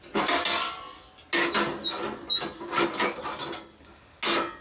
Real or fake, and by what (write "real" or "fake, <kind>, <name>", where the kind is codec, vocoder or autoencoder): real